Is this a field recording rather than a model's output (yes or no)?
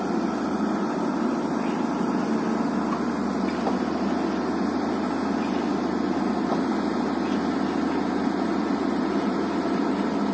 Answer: yes